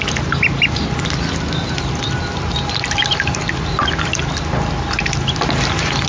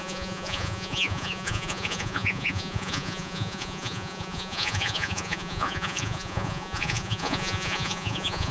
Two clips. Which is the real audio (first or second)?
first